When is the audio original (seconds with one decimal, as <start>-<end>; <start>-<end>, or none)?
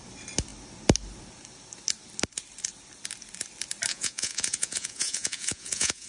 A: 0.0-3.9